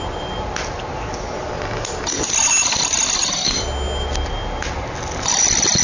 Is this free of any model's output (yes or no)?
yes